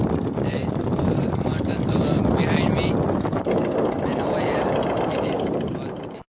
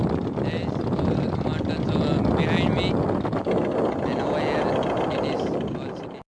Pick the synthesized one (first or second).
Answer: first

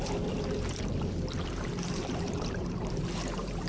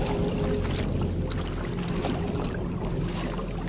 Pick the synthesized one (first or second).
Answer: first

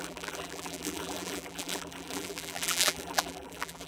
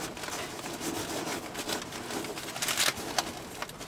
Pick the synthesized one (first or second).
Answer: first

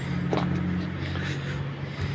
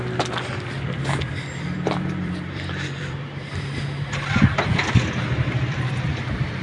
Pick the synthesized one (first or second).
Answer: second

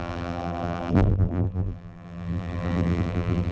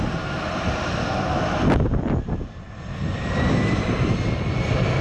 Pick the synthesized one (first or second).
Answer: first